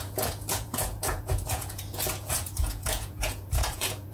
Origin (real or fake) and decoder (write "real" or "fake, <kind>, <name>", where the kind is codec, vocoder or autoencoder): fake, vocoder, Vocos